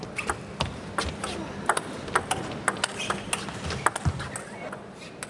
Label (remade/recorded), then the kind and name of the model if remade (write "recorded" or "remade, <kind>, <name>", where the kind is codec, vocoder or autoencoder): recorded